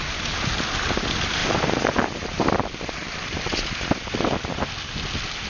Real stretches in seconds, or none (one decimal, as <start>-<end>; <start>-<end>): 0.0-1.4; 4.7-5.5